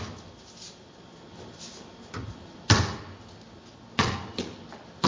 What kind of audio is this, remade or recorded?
recorded